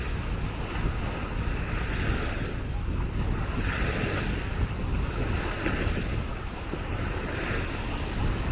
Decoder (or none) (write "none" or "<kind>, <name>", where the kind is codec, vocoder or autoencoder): none